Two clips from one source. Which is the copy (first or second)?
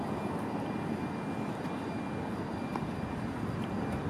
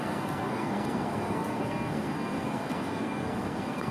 second